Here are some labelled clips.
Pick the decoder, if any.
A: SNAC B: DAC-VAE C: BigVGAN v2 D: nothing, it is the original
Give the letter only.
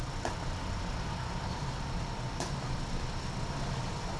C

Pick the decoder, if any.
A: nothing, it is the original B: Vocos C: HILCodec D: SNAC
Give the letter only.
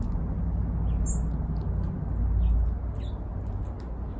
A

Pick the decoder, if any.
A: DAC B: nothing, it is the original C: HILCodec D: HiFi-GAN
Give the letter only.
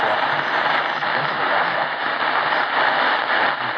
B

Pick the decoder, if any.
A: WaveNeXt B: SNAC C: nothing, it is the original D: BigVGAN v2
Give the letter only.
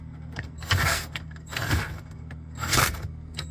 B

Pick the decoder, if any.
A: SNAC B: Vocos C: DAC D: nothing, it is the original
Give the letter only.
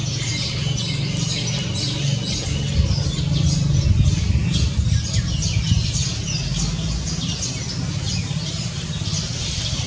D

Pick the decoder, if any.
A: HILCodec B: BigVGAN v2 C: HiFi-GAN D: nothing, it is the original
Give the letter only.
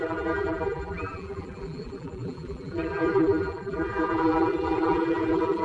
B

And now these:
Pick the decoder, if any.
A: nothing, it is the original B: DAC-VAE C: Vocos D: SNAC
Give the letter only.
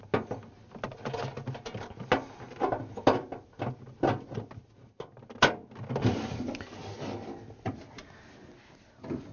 A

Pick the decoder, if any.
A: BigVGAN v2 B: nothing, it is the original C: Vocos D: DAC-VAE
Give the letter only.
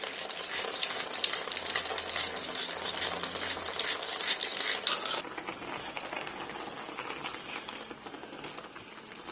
B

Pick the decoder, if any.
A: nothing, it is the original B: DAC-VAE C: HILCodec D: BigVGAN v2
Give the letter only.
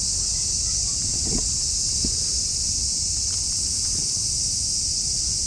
A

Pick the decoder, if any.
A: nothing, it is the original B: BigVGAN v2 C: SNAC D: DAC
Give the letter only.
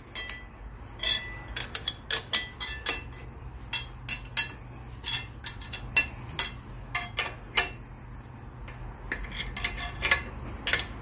A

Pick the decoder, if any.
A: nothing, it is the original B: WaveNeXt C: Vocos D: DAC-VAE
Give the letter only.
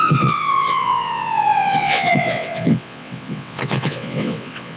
B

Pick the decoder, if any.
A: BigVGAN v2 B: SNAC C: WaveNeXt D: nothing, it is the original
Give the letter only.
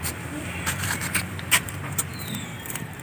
A